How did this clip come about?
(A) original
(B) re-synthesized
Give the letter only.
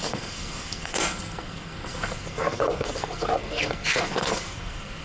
B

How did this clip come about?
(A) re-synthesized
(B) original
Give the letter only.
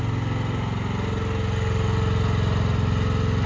B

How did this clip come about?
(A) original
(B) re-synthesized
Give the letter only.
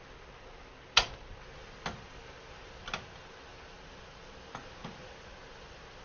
A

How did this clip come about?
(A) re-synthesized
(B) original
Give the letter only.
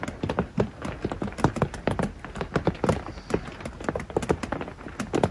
B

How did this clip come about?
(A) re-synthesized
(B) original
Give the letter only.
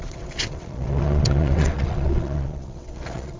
A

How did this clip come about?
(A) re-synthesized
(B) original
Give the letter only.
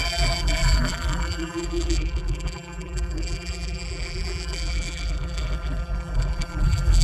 A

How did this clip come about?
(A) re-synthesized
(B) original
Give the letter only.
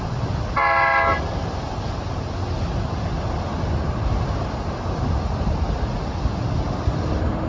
B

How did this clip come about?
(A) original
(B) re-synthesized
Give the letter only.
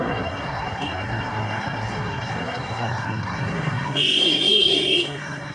B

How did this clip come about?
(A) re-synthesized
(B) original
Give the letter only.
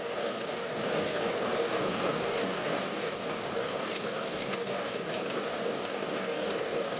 A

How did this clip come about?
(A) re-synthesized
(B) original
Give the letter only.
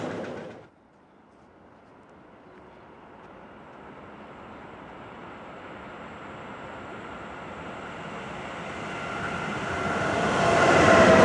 B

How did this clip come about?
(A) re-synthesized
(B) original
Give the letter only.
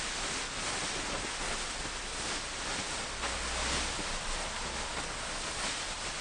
B